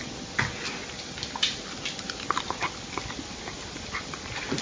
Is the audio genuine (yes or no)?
yes